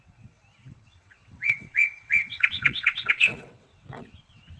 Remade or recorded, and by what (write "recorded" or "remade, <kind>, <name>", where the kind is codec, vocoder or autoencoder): remade, vocoder, WaveNeXt